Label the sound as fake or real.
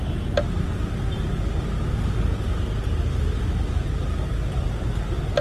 real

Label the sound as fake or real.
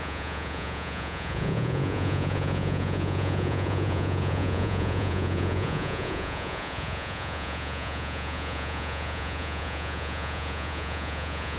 fake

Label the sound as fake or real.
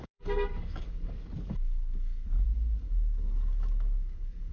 fake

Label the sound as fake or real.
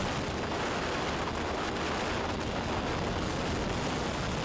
real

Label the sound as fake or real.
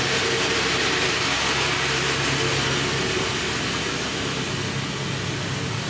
real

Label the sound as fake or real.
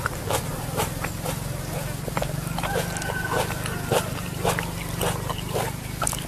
real